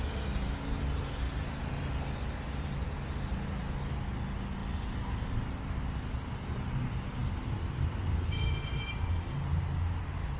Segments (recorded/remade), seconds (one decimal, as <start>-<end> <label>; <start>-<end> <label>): 0.0-4.6 recorded; 4.6-5.4 remade; 5.4-7.2 recorded; 7.2-8.5 remade; 8.5-10.4 recorded